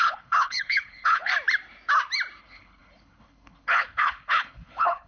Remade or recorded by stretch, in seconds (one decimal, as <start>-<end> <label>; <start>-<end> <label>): 0.0-1.3 remade; 1.3-2.4 recorded; 2.4-5.1 remade